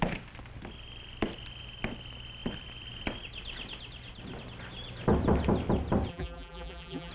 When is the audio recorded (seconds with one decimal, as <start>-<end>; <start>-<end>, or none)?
0.0-6.1